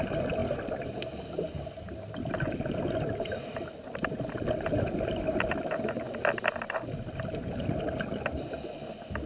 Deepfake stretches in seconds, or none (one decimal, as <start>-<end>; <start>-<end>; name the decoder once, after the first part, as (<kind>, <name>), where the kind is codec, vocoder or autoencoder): none